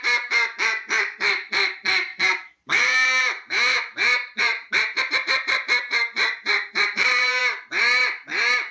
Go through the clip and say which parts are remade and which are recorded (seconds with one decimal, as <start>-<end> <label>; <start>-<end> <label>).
0.0-7.4 remade; 7.4-8.7 recorded